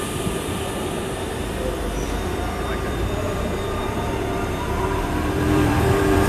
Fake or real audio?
fake